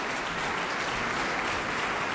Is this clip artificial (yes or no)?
no